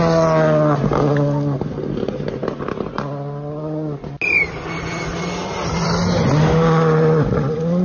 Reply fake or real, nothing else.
real